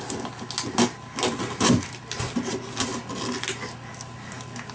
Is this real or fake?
real